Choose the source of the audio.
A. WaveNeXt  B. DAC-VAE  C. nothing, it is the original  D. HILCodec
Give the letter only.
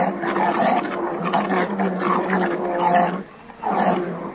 C